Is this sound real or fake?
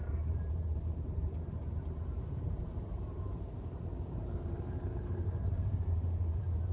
fake